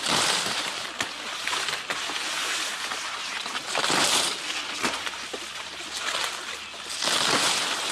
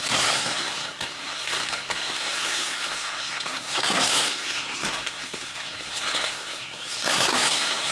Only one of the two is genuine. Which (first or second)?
first